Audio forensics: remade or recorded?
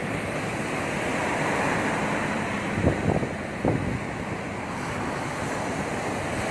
recorded